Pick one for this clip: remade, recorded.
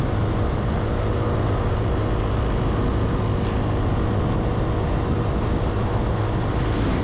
recorded